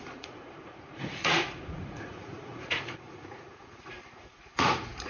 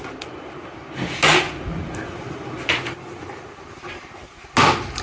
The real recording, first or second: second